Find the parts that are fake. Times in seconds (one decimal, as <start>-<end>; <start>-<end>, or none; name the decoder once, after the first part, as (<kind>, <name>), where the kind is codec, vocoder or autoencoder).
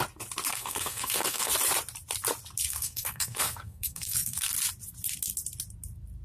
0.5-1.5 (codec, SNAC); 2.6-4.5